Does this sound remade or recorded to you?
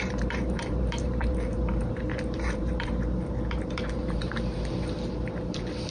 remade